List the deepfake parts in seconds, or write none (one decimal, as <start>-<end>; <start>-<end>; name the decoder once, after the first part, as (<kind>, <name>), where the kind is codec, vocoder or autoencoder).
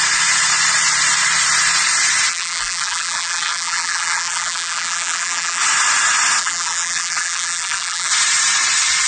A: 2.3-5.6 (vocoder, BigVGAN v2); 6.4-8.1